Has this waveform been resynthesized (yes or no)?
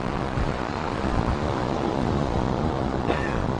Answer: yes